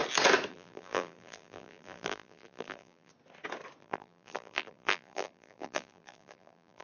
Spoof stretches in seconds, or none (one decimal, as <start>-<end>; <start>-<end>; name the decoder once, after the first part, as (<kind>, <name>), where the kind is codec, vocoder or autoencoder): 0.5-3.1 (vocoder, BigVGAN v2); 3.8-6.8